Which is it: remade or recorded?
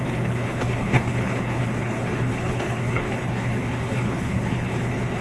remade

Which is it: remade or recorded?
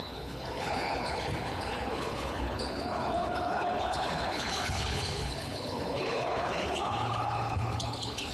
remade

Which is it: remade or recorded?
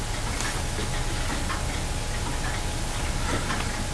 recorded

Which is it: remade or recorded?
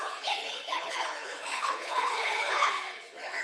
remade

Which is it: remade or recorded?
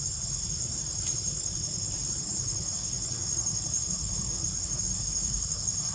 remade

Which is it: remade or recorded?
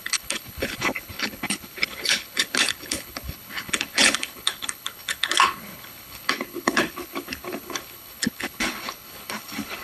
remade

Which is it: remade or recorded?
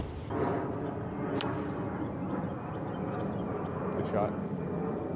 recorded